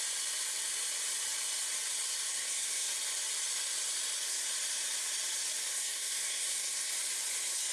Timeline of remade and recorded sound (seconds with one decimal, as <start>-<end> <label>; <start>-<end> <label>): 0.0-2.3 recorded; 2.3-2.9 remade; 2.9-5.7 recorded; 5.7-6.9 remade; 6.9-7.7 recorded